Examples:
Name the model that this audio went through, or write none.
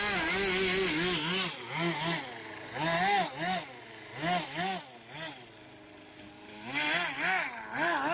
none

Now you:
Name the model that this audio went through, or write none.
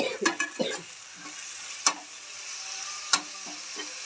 none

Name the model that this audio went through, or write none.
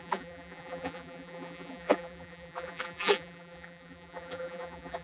vocoder, BigVGAN v2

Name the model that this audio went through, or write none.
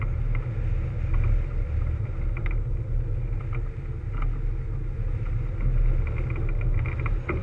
none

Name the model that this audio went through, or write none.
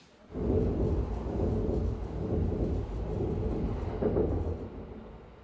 none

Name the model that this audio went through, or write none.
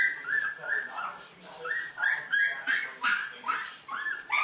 vocoder, BigVGAN v2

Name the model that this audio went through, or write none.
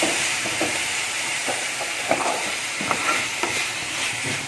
vocoder, BigVGAN v2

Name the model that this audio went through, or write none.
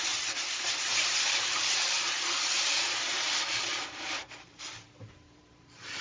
vocoder, BigVGAN v2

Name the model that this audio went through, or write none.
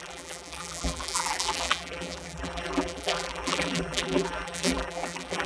vocoder, BigVGAN v2